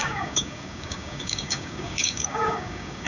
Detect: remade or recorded remade